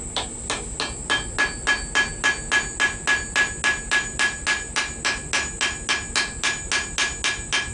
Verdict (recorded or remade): recorded